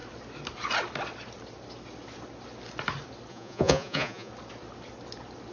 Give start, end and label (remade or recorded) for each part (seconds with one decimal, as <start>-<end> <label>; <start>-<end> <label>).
0.0-3.3 recorded; 3.3-4.3 remade; 4.3-5.5 recorded